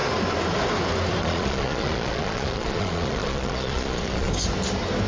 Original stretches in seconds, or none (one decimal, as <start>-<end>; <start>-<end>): 0.0-1.2; 4.3-5.1